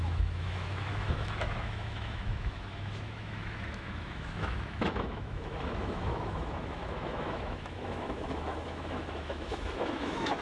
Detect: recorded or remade remade